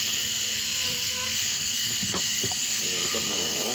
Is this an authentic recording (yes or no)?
no